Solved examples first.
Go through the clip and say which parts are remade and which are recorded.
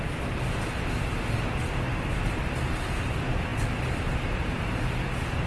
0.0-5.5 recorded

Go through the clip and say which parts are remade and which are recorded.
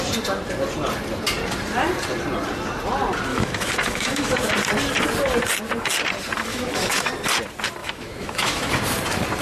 0.0-3.3 recorded; 3.3-4.5 remade; 4.5-6.5 recorded; 6.5-7.1 remade; 7.1-7.8 recorded; 7.8-8.7 remade; 8.7-9.4 recorded